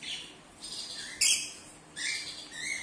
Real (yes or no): yes